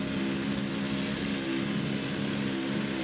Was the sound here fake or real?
real